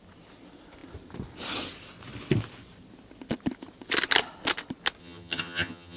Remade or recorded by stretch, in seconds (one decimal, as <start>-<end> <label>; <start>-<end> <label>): 0.0-5.0 recorded; 5.0-6.0 remade